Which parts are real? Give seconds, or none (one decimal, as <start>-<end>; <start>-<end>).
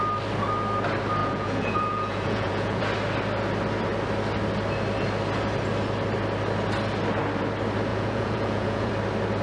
0.0-1.2; 2.8-7.9; 8.9-9.4